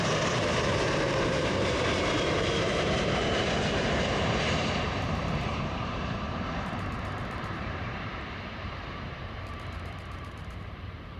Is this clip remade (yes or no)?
yes